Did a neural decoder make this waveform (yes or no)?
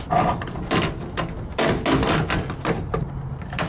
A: no